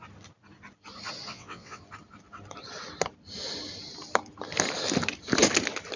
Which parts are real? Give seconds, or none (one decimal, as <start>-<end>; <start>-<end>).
0.0-1.3; 1.8-6.0